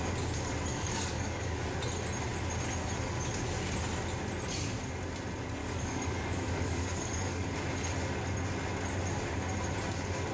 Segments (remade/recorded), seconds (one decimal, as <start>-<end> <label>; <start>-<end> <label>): 0.0-0.7 recorded; 0.7-1.7 remade; 1.7-5.6 recorded; 5.6-7.5 remade; 7.5-10.3 recorded